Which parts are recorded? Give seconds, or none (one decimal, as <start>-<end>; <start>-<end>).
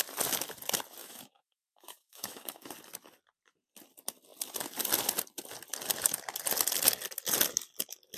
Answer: 0.0-1.0; 2.7-8.2